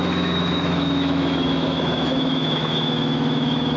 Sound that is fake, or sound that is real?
fake